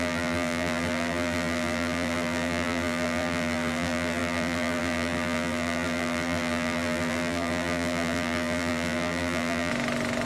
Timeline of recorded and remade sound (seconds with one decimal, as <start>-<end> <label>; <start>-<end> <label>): 0.0-9.7 remade; 9.7-10.3 recorded